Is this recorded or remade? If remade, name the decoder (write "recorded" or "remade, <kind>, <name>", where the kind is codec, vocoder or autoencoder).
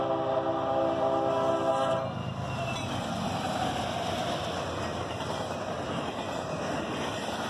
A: recorded